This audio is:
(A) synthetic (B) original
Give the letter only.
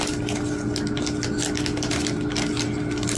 B